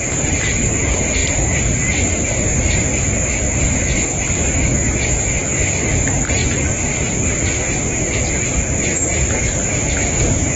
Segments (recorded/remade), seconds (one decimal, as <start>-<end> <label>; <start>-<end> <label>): 0.0-10.6 recorded